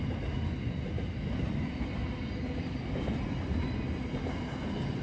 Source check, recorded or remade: recorded